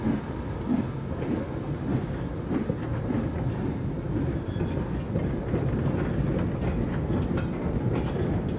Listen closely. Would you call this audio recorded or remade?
recorded